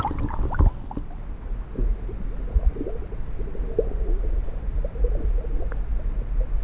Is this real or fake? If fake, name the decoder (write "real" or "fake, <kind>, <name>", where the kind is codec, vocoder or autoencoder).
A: real